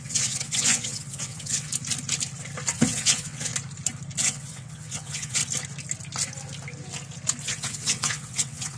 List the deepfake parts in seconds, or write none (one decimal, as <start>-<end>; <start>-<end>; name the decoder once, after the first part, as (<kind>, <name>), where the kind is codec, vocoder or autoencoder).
0.0-1.7 (vocoder, WaveNeXt); 2.7-3.5; 4.2-5.4; 7.4-8.8